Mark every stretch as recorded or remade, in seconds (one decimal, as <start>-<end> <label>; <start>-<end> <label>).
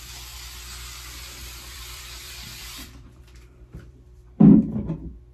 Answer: 0.0-1.4 recorded; 1.4-4.6 remade; 4.6-5.3 recorded